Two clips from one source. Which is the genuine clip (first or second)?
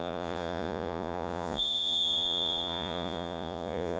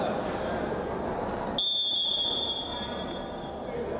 second